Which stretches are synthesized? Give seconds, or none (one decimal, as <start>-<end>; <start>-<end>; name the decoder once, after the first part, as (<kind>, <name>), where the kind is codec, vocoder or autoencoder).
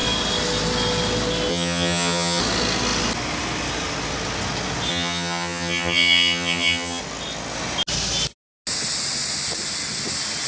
1.5-2.4 (vocoder, HiFi-GAN); 4.9-7.0